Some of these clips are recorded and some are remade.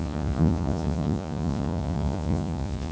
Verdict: remade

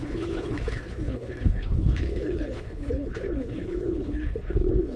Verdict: remade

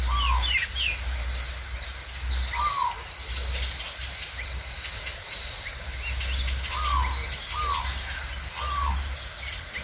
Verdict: recorded